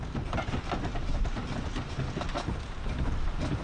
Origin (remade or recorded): recorded